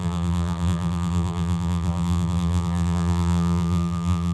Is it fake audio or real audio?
fake